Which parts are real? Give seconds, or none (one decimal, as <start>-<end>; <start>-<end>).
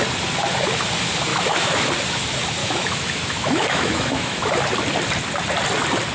0.0-1.3; 1.9-2.6; 4.5-6.1